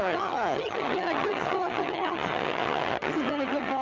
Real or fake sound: fake